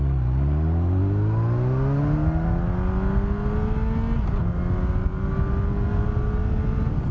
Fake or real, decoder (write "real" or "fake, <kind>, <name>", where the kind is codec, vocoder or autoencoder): real